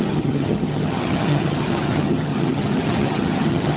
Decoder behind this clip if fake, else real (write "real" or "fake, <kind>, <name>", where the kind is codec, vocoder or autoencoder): fake, vocoder, HiFi-GAN